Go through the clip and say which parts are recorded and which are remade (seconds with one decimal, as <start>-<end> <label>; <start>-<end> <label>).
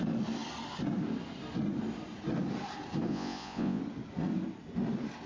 0.0-3.1 recorded; 3.1-3.8 remade; 3.8-5.3 recorded